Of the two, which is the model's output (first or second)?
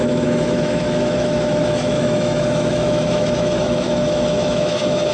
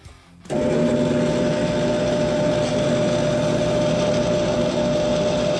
first